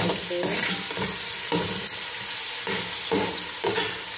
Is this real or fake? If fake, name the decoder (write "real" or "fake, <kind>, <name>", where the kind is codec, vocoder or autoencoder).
real